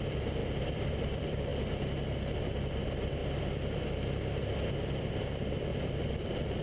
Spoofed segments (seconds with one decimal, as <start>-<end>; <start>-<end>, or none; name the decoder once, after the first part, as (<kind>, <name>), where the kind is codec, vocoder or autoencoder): 0.0-1.5 (vocoder, BigVGAN v2); 2.3-3.2; 5.0-6.6